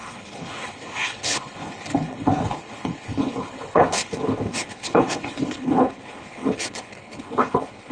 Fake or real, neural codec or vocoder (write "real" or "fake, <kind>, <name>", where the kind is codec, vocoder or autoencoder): fake, codec, HILCodec